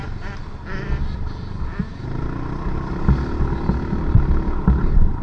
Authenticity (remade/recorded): recorded